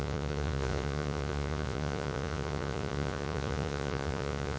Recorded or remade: remade